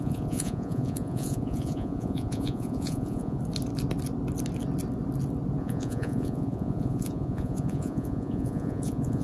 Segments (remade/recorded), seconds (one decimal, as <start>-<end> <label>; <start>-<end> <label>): 0.0-3.4 remade; 3.4-5.6 recorded; 5.6-9.2 remade